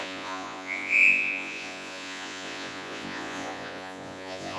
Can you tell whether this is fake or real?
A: fake